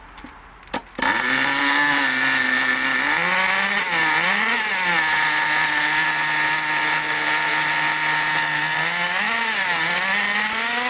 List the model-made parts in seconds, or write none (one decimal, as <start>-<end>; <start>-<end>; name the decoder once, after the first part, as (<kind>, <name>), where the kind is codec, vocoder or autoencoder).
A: none